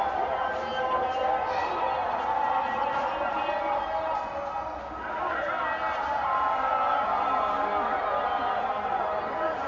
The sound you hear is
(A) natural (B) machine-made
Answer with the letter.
A